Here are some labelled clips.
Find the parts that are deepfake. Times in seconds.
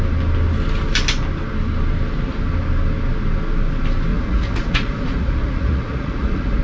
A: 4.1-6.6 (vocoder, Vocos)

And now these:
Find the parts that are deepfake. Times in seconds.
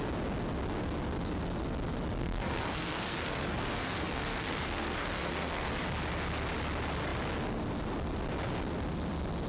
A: 2.2-5.7 (codec, SNAC)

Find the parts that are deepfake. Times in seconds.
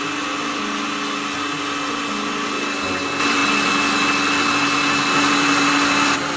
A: none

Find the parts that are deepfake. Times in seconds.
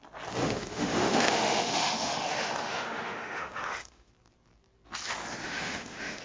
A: 0.4-4.1 (autoencoder, DAC-VAE); 5.4-6.2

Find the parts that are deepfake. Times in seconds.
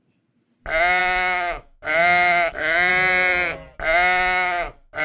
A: 1.0-2.9 (autoencoder, DAC-VAE)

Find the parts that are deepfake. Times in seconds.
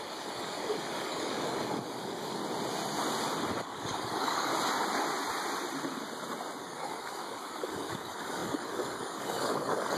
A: 0.0-2.4 (codec, DAC); 3.6-4.5; 6.6-10.0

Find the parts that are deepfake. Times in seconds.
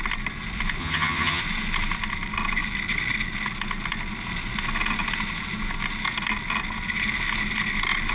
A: 0.8-1.4 (vocoder, HiFi-GAN)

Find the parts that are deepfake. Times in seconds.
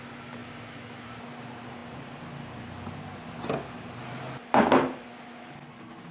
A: none